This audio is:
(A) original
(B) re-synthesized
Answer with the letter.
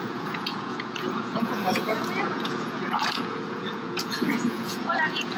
B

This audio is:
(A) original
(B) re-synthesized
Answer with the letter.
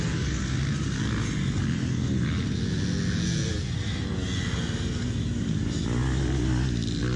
A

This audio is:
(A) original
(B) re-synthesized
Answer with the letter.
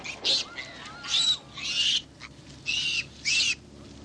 A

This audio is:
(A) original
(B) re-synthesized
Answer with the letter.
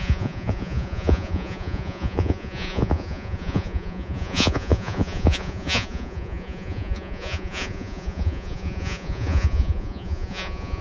B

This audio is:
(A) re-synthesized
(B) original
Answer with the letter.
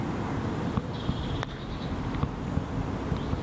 B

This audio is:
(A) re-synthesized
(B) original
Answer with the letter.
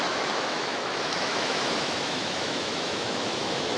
A